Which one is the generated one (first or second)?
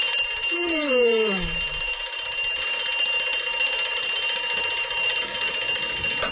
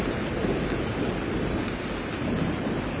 first